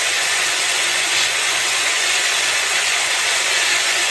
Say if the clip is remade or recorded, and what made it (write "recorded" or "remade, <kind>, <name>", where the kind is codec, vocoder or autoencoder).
remade, vocoder, Vocos